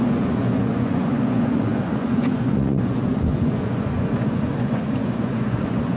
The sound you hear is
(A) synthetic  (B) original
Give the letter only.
A